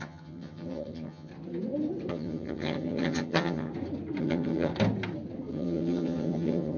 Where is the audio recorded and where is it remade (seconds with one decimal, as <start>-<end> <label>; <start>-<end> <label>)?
0.0-1.3 remade; 1.3-2.1 recorded; 2.1-3.7 remade; 3.7-4.2 recorded; 4.2-4.7 remade; 4.7-5.5 recorded; 5.5-6.8 remade